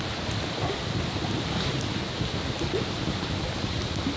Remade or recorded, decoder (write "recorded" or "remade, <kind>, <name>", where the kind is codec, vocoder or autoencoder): recorded